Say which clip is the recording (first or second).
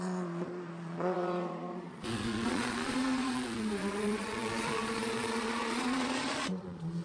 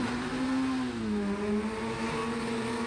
second